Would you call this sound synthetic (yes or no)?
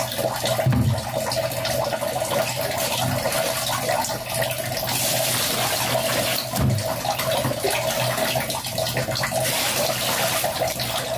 no